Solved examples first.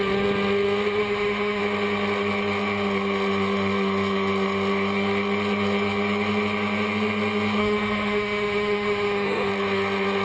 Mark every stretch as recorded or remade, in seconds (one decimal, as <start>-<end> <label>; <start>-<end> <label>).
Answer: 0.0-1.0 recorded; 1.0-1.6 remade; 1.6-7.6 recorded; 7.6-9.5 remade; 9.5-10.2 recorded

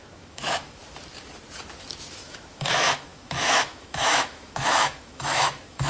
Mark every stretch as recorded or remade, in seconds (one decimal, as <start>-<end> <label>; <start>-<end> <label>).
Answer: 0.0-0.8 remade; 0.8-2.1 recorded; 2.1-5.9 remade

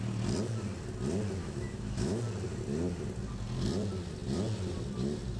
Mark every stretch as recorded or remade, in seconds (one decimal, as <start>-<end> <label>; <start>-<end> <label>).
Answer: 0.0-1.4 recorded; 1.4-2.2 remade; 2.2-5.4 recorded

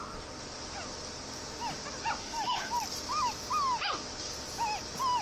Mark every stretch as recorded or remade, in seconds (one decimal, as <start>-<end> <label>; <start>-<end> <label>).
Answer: 0.0-2.2 recorded; 2.2-2.7 remade; 2.7-5.2 recorded